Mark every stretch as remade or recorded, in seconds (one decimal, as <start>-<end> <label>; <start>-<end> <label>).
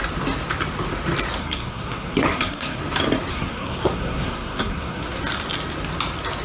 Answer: 0.0-1.4 recorded; 1.4-2.8 remade; 2.8-3.3 recorded; 3.3-5.2 remade; 5.2-6.4 recorded